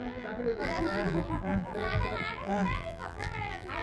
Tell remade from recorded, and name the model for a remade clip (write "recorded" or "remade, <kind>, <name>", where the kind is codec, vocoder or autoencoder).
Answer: remade, vocoder, BigVGAN v2